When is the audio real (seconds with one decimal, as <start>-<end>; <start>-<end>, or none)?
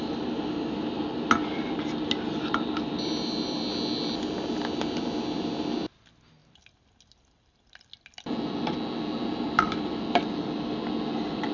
0.0-11.5